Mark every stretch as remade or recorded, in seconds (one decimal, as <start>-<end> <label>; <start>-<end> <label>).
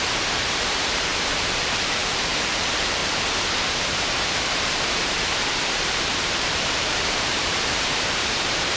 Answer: 0.0-3.0 remade; 3.0-3.7 recorded; 3.7-8.8 remade